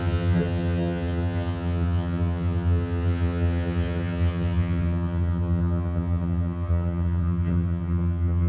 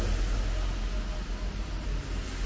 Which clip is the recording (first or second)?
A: second